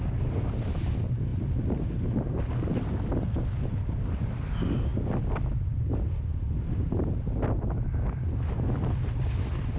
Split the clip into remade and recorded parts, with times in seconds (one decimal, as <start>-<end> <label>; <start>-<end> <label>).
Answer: 0.0-9.8 recorded